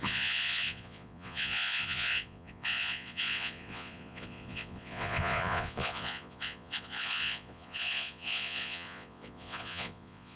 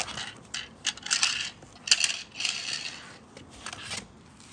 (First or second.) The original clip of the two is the second